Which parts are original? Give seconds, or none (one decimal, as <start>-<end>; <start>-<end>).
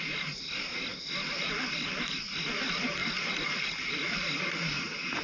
0.0-5.2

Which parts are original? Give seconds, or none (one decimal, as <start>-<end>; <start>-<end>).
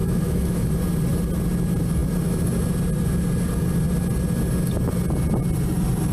0.7-6.1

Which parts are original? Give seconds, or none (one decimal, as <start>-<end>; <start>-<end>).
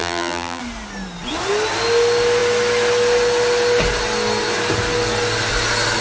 0.6-6.0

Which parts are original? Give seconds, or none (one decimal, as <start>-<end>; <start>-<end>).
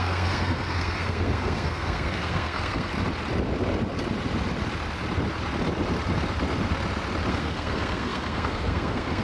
2.9-7.3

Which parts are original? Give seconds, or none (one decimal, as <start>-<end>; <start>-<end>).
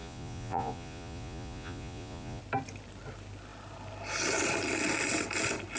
2.4-5.8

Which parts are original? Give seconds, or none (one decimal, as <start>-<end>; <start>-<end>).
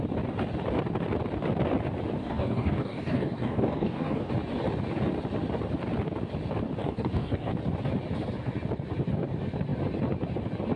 0.0-2.2; 4.3-6.8; 7.5-10.8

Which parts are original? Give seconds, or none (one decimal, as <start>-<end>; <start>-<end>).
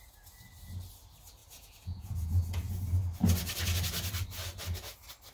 0.0-1.4; 2.7-5.3